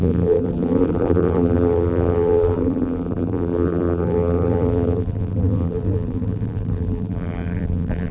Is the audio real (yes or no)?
no